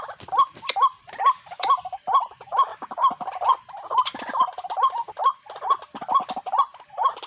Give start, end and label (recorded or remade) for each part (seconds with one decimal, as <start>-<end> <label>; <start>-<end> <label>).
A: 0.0-7.3 recorded